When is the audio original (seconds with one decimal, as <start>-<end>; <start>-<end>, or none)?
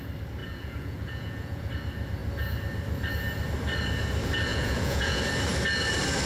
0.0-0.4; 1.7-4.5; 5.2-6.3